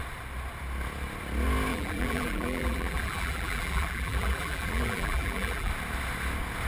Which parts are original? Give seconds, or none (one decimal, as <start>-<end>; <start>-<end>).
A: 0.0-1.7; 5.7-6.7